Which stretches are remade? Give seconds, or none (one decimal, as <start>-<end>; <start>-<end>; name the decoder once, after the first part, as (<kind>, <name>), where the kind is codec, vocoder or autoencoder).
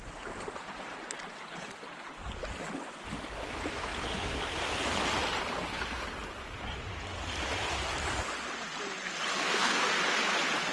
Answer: 9.3-9.9 (codec, SNAC)